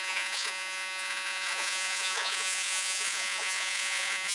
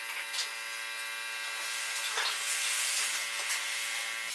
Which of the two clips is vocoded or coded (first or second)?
first